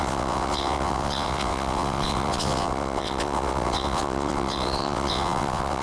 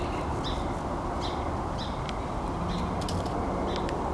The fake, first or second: first